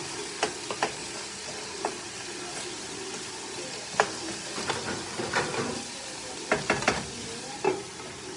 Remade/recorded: recorded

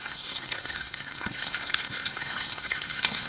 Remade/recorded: remade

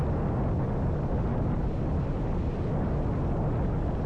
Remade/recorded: recorded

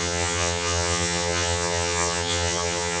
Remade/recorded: remade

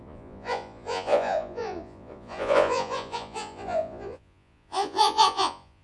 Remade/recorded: remade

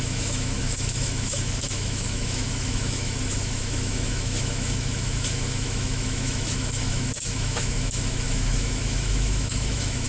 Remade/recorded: remade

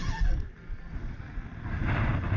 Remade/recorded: recorded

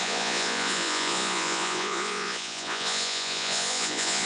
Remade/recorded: remade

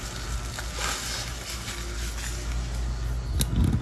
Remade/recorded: recorded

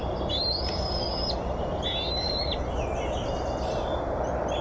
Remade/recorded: recorded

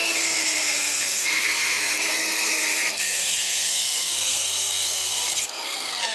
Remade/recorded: remade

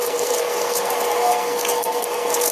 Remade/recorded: remade